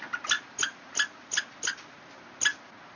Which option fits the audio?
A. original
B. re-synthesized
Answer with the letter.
A